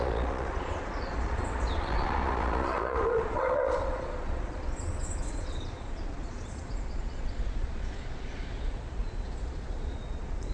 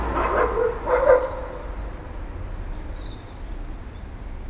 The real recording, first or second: second